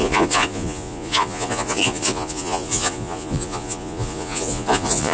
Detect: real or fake fake